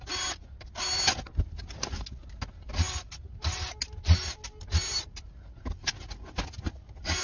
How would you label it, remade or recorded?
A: recorded